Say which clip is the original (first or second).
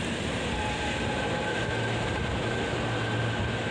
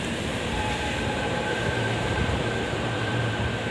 first